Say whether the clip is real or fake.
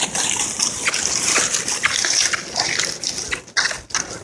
real